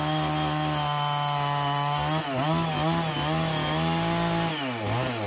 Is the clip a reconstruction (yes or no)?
no